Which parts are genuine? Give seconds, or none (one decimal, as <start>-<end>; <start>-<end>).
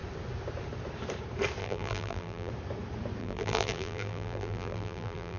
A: 0.0-1.6; 2.5-3.2